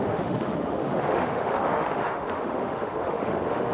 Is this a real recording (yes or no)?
no